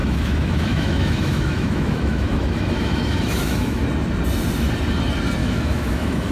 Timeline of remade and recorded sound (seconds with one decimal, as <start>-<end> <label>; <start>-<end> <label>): 0.0-3.8 remade; 3.8-5.4 recorded; 5.4-6.3 remade